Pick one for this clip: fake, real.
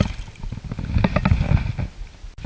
real